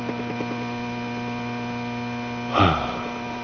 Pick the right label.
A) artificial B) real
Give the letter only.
B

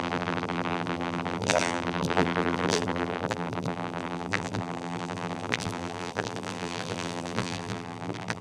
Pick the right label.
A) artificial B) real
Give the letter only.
A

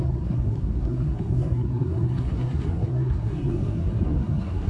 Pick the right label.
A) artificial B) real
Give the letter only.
A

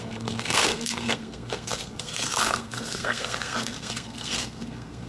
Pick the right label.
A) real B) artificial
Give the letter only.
B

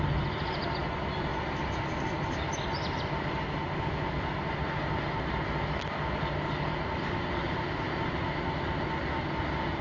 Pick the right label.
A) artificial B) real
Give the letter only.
B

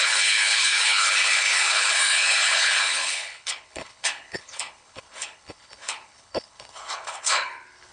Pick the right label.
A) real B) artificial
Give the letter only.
B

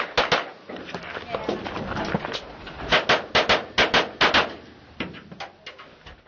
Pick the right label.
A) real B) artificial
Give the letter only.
A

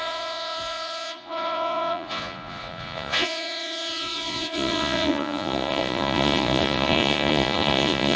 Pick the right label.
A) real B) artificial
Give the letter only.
B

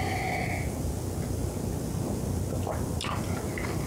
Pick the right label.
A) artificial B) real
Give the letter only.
B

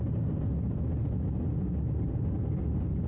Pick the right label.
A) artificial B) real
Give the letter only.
B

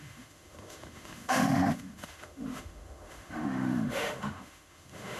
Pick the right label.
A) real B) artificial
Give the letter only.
B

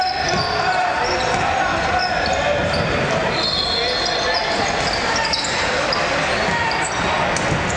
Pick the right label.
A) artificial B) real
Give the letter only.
B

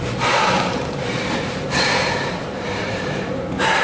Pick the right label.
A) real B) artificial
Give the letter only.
B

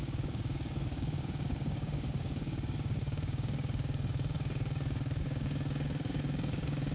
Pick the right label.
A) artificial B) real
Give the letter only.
A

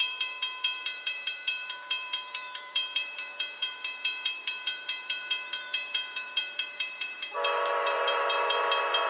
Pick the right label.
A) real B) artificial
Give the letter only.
B